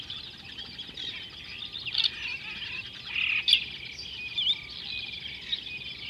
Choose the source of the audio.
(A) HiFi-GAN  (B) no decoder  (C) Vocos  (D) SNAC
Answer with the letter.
B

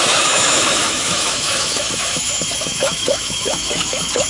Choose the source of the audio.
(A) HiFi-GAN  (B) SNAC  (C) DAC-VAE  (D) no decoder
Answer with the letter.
C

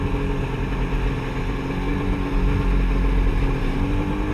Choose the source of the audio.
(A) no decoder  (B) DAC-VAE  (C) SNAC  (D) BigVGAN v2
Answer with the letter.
A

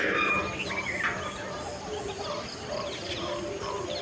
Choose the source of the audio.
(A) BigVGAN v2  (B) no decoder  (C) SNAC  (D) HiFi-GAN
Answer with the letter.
B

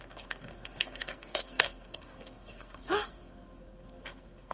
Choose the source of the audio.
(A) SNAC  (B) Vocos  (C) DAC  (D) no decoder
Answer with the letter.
A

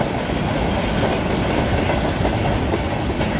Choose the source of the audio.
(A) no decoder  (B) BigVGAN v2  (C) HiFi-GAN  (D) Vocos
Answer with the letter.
A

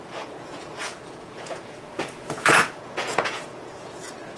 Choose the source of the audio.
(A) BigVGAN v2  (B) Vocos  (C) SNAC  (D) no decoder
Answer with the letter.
B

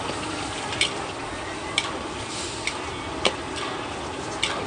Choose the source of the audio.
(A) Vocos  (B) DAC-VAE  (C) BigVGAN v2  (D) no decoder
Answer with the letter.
C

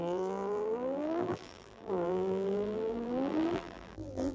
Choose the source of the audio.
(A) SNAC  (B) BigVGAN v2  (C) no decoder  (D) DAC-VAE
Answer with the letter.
B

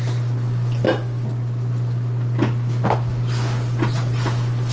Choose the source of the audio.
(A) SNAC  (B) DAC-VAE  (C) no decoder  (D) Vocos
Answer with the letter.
C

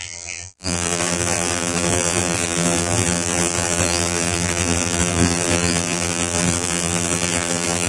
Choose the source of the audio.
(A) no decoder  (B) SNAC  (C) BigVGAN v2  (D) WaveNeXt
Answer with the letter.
C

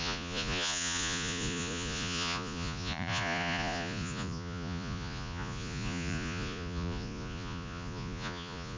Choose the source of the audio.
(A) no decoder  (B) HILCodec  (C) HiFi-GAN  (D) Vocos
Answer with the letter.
D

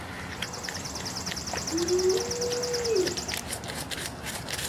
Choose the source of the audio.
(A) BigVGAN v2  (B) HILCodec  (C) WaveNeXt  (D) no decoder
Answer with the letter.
D